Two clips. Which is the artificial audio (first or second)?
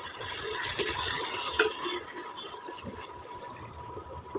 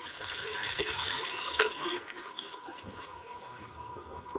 second